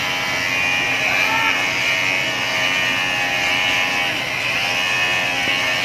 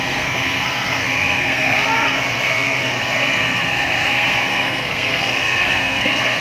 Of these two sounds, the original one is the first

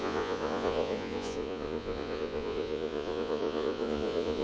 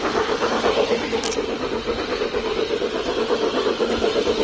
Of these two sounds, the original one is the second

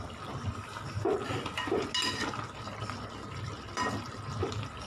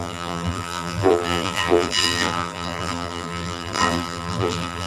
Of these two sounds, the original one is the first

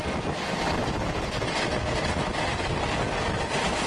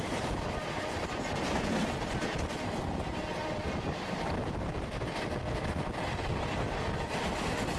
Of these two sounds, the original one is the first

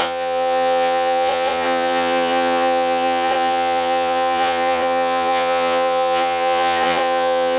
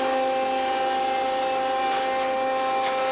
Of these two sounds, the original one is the second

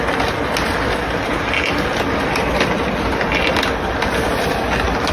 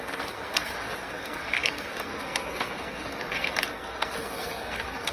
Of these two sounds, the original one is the first